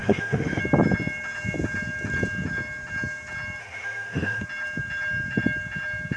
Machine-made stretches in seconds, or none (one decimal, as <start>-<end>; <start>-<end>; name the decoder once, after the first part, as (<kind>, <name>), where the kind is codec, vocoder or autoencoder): 0.0-0.6 (autoencoder, DAC-VAE); 3.6-4.4